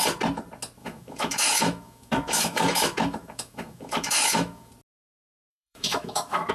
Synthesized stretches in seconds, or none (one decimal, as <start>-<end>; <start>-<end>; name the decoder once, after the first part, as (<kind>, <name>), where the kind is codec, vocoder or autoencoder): 0.8-4.7 (autoencoder, DAC-VAE); 5.5-6.5